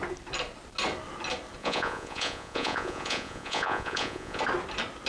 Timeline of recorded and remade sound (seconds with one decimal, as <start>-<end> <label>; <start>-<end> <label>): 0.0-1.6 recorded; 1.6-4.4 remade; 4.4-5.1 recorded